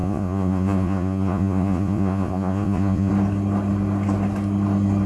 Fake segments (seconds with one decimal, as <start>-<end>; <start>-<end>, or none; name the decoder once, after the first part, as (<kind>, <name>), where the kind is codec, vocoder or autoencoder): 0.0-3.1 (vocoder, Vocos)